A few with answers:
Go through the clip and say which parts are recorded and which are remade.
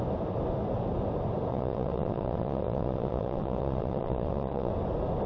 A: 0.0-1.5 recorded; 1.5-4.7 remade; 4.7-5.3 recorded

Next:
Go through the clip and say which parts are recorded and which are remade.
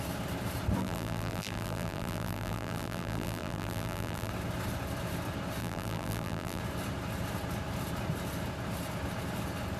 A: 0.0-0.8 recorded; 0.8-4.3 remade; 4.3-5.6 recorded; 5.6-6.6 remade; 6.6-9.8 recorded